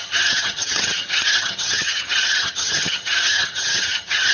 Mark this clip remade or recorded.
remade